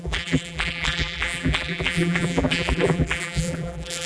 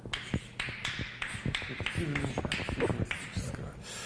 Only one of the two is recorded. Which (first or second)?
second